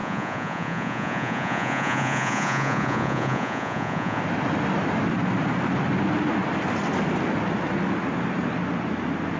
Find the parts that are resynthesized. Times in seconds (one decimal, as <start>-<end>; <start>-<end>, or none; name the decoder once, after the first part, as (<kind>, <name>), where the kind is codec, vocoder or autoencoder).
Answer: 0.0-4.2 (vocoder, Vocos)